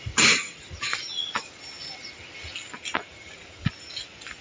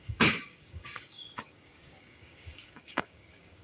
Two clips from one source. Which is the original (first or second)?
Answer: first